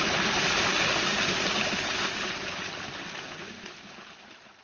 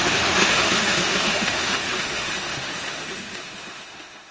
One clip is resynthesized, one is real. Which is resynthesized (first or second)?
second